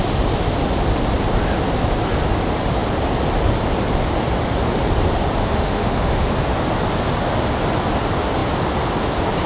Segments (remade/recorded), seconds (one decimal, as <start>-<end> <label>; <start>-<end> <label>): 0.0-5.4 recorded; 5.4-6.3 remade; 6.3-9.5 recorded